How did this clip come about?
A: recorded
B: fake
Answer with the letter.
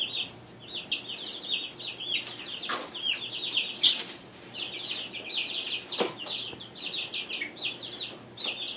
A